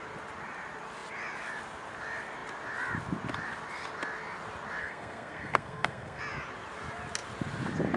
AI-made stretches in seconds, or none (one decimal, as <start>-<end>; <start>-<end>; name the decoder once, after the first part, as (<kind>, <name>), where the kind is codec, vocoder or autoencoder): 4.8-6.2 (codec, SNAC)